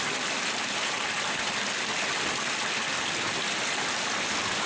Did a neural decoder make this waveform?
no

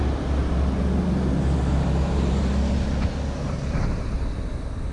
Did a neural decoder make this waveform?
no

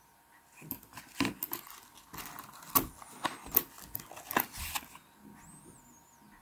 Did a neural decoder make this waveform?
no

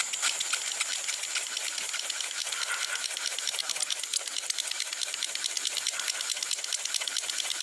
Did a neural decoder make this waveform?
no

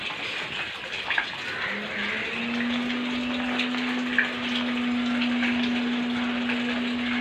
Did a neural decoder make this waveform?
no